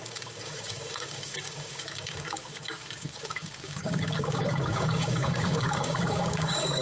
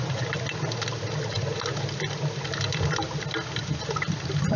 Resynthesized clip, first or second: first